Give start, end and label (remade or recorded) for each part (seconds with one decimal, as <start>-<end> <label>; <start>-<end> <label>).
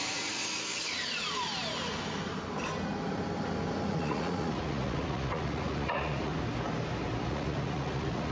0.0-0.4 remade; 0.4-3.9 recorded; 3.9-6.3 remade; 6.3-7.2 recorded; 7.2-8.3 remade